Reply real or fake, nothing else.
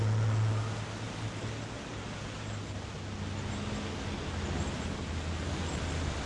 real